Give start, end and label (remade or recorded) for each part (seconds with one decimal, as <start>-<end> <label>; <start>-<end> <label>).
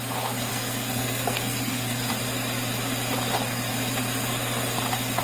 0.0-0.5 recorded; 0.5-2.1 remade; 2.1-5.2 recorded